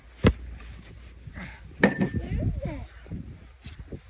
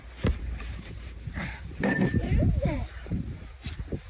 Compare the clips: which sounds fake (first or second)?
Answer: second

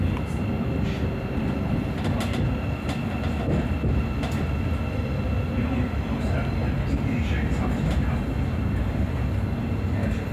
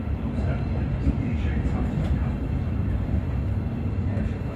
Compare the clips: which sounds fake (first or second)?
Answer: second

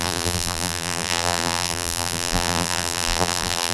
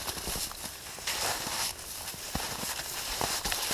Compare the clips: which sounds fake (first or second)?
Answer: first